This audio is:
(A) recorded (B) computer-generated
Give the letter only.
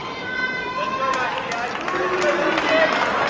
A